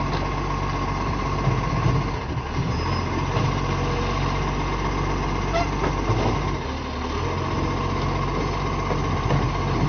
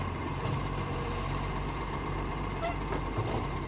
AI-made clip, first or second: second